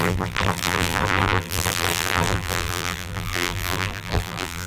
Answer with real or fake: fake